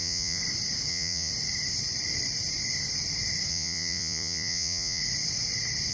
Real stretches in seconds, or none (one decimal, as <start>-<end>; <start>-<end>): 0.4-0.9; 1.3-3.5; 5.0-5.9